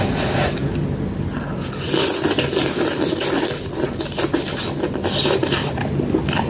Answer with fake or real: real